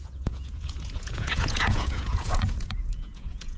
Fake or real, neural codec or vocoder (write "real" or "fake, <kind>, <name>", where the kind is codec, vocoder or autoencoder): fake, vocoder, Vocos